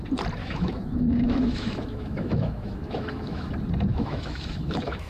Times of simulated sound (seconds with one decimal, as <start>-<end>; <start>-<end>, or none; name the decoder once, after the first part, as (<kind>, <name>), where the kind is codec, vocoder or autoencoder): 0.4-3.5 (autoencoder, DAC-VAE); 3.9-5.1